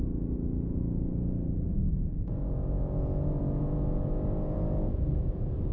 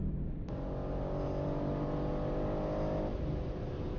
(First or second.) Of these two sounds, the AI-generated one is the first